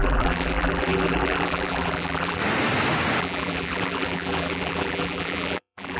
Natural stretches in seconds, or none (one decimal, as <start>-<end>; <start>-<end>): 2.4-3.2